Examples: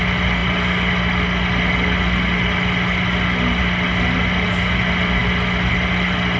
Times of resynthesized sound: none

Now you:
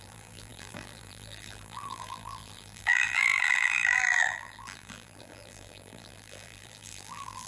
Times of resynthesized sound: 0.0-7.5 (vocoder, BigVGAN v2)

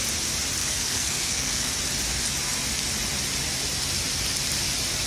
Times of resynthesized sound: 0.6-1.7 (codec, SNAC)